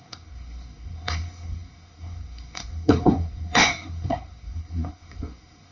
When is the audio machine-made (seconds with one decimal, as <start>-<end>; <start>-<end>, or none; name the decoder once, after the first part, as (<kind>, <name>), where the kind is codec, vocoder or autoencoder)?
0.0-5.7 (codec, SNAC)